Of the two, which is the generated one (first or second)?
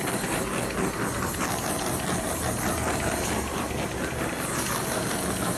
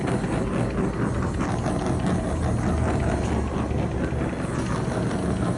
first